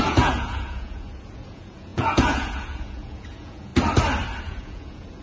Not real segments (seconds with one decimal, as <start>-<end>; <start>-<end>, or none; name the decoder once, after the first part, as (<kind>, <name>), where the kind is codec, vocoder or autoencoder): 0.0-3.7 (vocoder, Vocos); 4.4-5.2